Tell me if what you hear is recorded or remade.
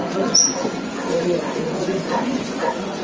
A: remade